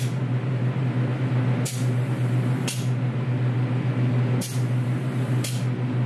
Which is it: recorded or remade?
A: recorded